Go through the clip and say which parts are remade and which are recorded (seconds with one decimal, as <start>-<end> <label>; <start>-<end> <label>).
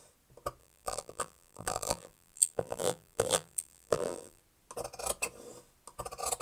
0.0-0.6 recorded; 0.6-4.4 remade; 4.4-6.4 recorded